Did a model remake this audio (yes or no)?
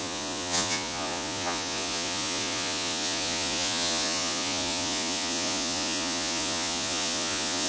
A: yes